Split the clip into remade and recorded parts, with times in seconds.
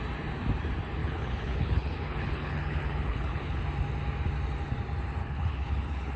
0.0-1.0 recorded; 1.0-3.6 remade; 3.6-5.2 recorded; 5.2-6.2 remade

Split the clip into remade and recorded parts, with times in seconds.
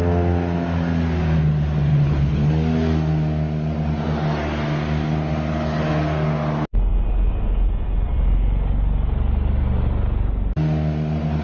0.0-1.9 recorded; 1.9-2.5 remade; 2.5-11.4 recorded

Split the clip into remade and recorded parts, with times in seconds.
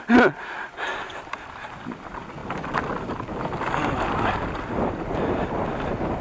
0.0-6.2 recorded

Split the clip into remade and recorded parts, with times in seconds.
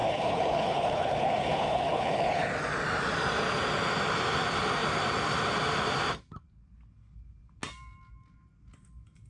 0.0-2.5 remade; 2.5-9.3 recorded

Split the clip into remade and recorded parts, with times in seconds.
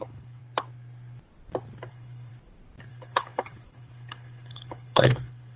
0.0-0.4 remade; 0.4-1.9 recorded; 1.9-2.3 remade; 2.3-2.9 recorded; 2.9-5.6 remade